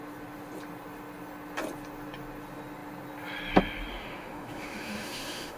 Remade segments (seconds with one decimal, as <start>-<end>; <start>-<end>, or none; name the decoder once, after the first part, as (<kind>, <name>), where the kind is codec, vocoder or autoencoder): 3.9-5.6 (autoencoder, DAC-VAE)